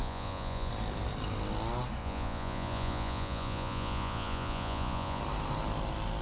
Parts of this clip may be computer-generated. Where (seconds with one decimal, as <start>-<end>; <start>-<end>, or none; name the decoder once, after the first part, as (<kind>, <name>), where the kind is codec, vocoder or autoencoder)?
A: 0.0-0.7 (vocoder, Vocos); 2.0-5.2